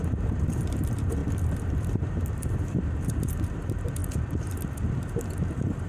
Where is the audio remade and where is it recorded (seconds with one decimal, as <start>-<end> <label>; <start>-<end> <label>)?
0.0-4.0 remade; 4.0-5.9 recorded